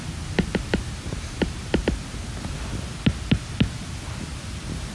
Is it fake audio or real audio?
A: real